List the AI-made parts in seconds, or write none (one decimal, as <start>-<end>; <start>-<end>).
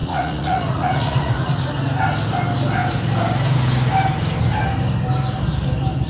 0.0-1.6